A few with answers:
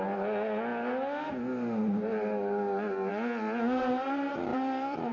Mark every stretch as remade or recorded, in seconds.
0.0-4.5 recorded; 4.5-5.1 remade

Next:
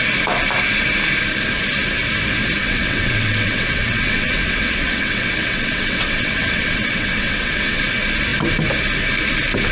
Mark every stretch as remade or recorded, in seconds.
0.0-2.6 recorded; 2.6-7.8 remade; 7.8-9.7 recorded